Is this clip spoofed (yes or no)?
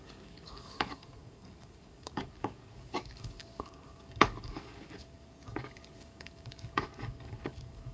yes